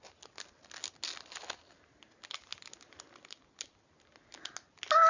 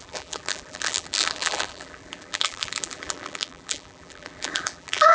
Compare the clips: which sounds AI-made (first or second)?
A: second